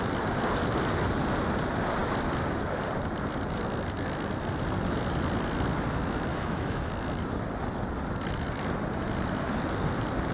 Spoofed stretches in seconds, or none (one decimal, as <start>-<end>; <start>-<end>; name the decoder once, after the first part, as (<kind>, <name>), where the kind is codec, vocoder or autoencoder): 6.3-6.9 (autoencoder, DAC-VAE)